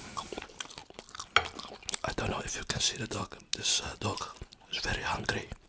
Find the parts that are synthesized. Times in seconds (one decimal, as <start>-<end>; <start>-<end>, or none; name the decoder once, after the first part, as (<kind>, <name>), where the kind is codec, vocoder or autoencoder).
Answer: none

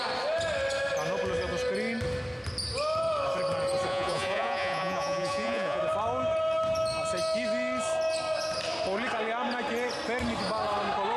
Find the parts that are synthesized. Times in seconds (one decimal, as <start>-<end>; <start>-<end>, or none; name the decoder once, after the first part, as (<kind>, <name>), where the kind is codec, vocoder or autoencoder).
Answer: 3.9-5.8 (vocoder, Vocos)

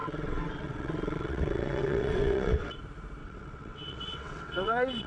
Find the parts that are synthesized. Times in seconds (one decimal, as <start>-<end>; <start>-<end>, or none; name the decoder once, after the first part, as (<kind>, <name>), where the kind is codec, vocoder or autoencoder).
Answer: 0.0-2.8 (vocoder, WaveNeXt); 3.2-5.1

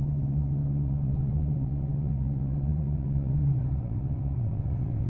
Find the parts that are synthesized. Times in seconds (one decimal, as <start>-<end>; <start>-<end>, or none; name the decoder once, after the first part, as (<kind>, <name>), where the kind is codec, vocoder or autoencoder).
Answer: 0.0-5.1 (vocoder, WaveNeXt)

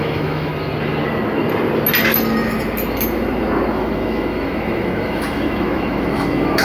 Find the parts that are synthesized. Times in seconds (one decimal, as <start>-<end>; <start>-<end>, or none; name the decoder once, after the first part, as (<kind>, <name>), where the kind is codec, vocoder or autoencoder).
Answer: 0.0-0.5 (autoencoder, DAC-VAE); 3.7-6.6